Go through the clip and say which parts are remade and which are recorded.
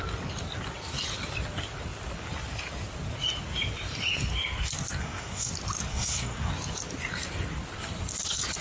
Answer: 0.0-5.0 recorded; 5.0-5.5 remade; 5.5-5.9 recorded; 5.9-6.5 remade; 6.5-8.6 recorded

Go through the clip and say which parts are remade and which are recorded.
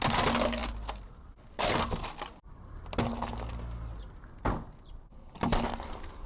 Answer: 0.0-6.3 recorded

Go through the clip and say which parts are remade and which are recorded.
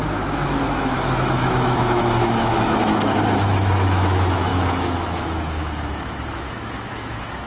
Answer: 0.0-7.5 remade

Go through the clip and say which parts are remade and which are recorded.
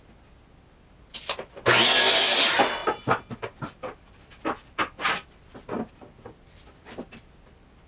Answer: 0.0-7.9 recorded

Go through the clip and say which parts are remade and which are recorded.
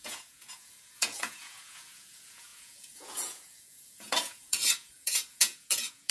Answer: 0.0-6.1 remade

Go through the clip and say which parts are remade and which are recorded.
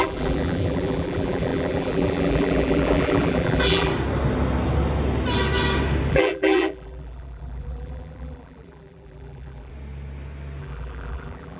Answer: 0.0-3.9 remade; 3.9-6.1 recorded; 6.1-9.7 remade; 9.7-10.6 recorded; 10.6-11.6 remade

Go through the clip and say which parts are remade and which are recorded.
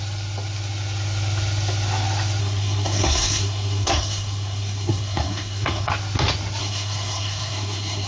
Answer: 0.0-2.4 recorded; 2.4-5.9 remade; 5.9-6.6 recorded; 6.6-8.1 remade